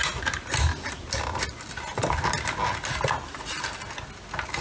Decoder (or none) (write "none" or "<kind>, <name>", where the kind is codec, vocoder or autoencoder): none